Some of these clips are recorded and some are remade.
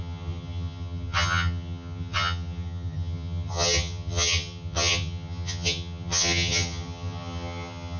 remade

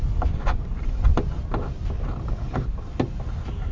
recorded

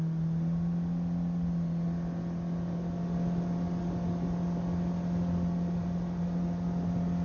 recorded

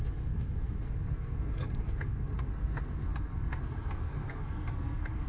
remade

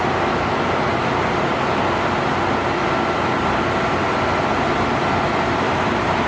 recorded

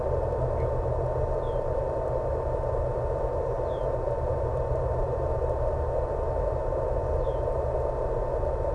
remade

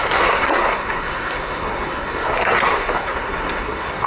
remade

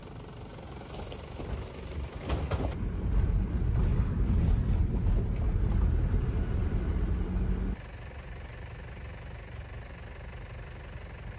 recorded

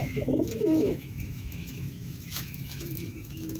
remade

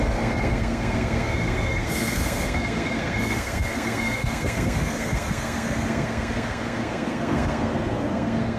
remade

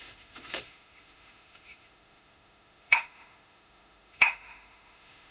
remade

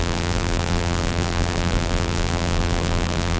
remade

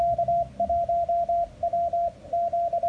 recorded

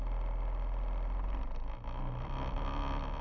recorded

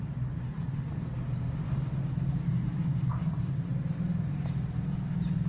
recorded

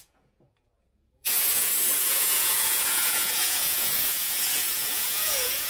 remade